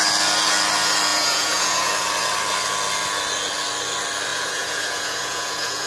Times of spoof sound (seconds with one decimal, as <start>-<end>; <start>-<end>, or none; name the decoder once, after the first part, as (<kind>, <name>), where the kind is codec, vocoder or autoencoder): 1.1-1.9 (vocoder, Vocos); 4.3-5.9